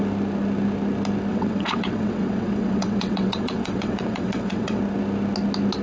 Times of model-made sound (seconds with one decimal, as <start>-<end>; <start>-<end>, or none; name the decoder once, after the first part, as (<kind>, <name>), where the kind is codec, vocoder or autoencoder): 1.3-4.8 (vocoder, WaveNeXt)